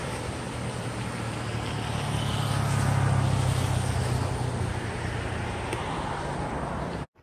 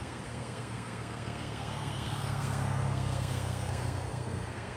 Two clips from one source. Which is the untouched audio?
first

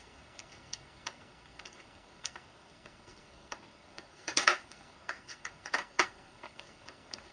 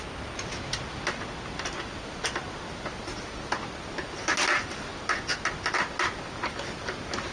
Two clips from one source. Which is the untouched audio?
second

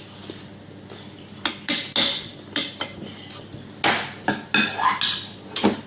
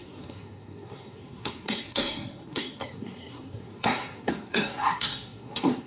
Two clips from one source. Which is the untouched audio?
first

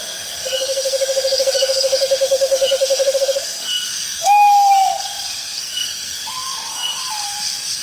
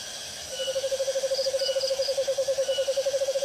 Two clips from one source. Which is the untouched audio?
second